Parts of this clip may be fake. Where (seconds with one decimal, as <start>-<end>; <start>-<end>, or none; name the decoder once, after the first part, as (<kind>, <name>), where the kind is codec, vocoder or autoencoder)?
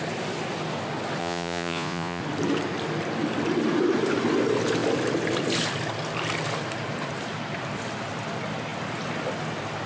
1.2-2.2 (vocoder, Vocos)